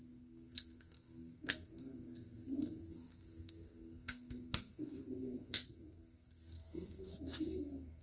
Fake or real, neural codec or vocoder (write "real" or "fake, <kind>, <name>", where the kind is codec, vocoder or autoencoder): fake, codec, SNAC